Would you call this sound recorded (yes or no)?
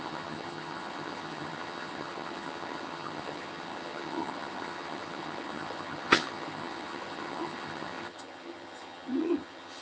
no